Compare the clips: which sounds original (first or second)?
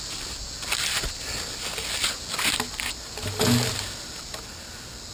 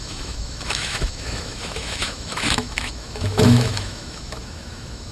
first